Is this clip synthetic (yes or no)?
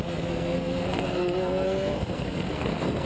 yes